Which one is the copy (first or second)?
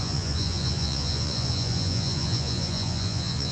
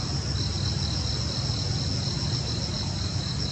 first